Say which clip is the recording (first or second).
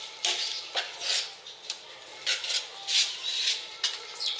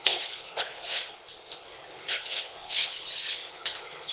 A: first